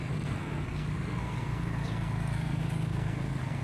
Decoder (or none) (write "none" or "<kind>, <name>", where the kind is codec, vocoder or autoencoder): codec, SNAC